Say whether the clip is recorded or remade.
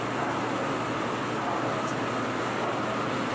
recorded